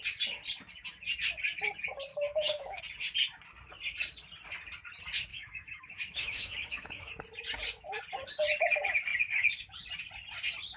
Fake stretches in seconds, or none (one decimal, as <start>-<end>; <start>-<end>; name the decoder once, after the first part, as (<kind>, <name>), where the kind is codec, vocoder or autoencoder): 2.1-2.8 (autoencoder, DAC-VAE); 5.3-7.1